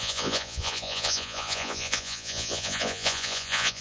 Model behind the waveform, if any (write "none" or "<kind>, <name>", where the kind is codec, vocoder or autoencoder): vocoder, Vocos